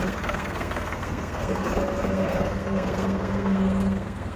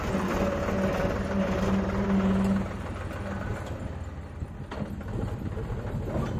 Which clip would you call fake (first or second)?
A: first